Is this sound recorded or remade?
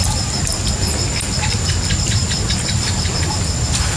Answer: recorded